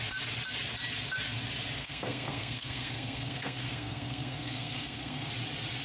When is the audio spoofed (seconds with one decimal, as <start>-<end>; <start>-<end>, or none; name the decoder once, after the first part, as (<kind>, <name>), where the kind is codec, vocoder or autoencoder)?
1.8-5.3 (codec, SNAC)